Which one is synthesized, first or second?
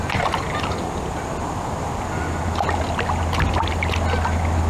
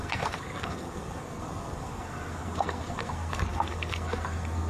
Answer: second